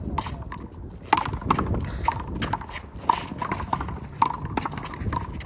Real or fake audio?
real